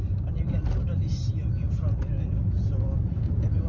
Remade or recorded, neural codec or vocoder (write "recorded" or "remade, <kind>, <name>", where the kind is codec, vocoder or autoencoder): recorded